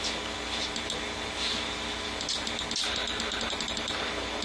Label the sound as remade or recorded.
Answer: recorded